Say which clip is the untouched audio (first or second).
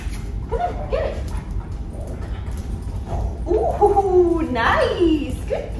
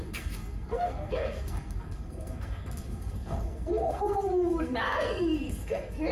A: first